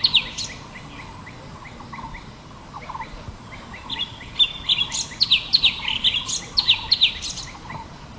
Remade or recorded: recorded